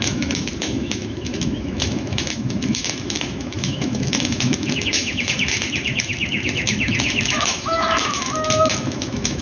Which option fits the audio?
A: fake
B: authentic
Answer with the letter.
A